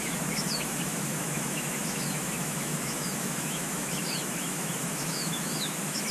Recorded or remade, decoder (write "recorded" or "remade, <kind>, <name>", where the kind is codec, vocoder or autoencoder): remade, autoencoder, DAC-VAE